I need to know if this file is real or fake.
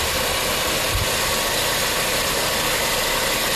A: real